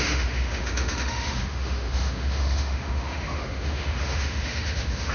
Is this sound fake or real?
fake